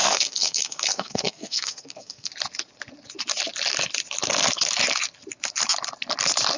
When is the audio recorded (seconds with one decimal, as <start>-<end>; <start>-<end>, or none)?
2.3-6.6